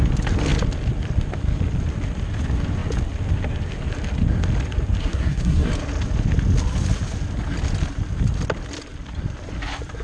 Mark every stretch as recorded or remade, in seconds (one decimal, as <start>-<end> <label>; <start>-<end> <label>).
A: 0.0-5.0 recorded; 5.0-5.7 remade; 5.7-10.0 recorded